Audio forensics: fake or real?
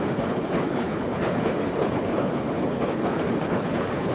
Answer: fake